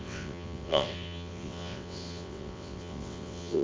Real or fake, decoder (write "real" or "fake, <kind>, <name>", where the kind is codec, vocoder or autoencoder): fake, vocoder, WaveNeXt